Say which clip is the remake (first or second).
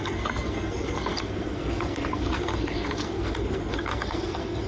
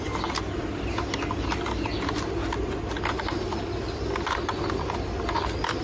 first